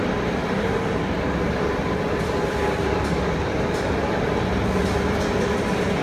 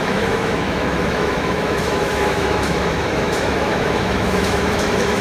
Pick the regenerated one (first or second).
second